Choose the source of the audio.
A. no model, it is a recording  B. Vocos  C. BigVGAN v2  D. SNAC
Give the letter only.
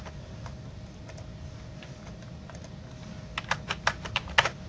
A